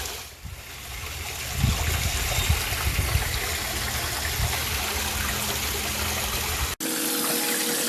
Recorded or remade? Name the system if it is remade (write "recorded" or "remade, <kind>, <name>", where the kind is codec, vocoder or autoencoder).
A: recorded